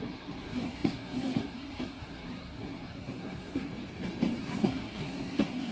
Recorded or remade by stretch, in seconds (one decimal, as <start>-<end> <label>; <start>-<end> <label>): 0.0-3.7 remade; 3.7-4.4 recorded; 4.4-5.7 remade